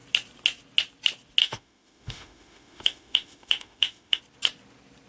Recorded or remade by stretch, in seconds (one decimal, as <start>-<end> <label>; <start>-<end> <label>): 0.0-1.4 recorded; 1.4-4.2 remade; 4.2-5.1 recorded